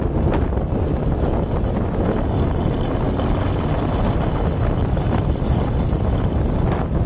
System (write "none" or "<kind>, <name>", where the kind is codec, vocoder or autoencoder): none